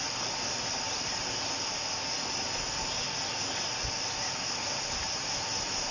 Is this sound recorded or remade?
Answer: recorded